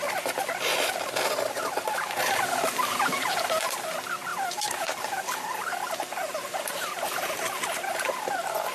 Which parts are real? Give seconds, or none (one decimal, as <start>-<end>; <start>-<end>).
0.0-2.2; 3.6-4.3; 8.1-8.7